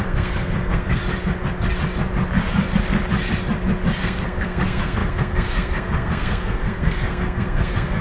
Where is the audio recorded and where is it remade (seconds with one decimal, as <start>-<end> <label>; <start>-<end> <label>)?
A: 0.0-1.0 remade; 1.0-4.0 recorded; 4.0-8.0 remade